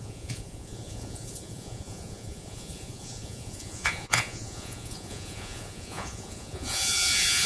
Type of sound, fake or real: fake